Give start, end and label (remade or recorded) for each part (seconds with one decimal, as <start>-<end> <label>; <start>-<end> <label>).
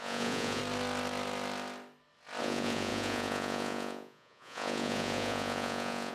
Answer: 0.0-0.6 remade; 0.6-2.4 recorded; 2.4-6.1 remade